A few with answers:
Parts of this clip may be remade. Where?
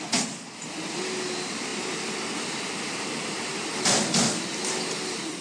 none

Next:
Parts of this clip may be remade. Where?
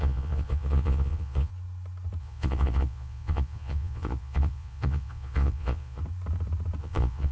0.0-1.5 (vocoder, Vocos); 2.2-6.0; 6.8-7.3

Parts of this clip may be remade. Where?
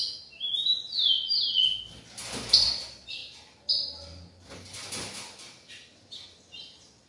0.0-0.9 (vocoder, BigVGAN v2); 1.9-7.1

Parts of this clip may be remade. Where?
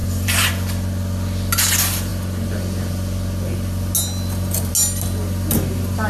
0.0-0.5 (vocoder, BigVGAN v2)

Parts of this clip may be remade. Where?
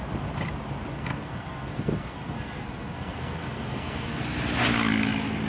0.9-4.2 (codec, SNAC)